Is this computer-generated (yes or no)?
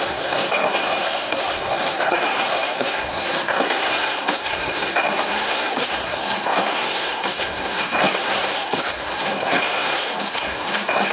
yes